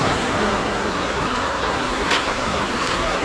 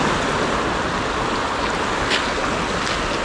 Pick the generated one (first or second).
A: first